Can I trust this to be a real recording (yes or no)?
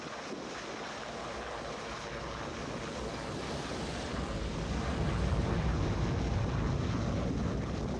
yes